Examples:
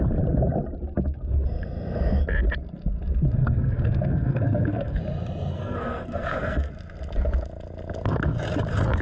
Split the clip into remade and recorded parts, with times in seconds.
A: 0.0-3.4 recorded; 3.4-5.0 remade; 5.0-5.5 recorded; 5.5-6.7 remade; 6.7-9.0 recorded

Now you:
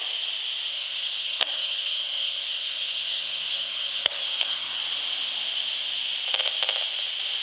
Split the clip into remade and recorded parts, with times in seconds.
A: 0.0-0.7 recorded; 0.7-4.8 remade; 4.8-7.4 recorded

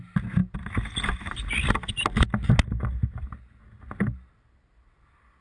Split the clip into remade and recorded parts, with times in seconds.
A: 0.0-5.4 recorded

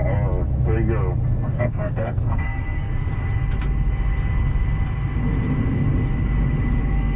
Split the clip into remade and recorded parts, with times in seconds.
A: 0.0-1.6 recorded; 1.6-2.9 remade; 2.9-6.8 recorded; 6.8-7.2 remade

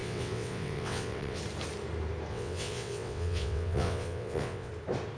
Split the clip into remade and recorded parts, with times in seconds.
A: 0.0-1.4 remade; 1.4-2.3 recorded; 2.3-4.7 remade; 4.7-5.2 recorded

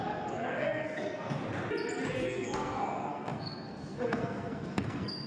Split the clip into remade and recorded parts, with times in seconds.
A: 0.0-1.4 remade; 1.4-2.2 recorded; 2.2-5.3 remade

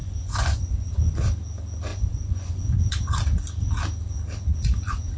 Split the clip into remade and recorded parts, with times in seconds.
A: 0.0-0.9 remade; 0.9-1.9 recorded; 1.9-2.9 remade; 2.9-5.2 recorded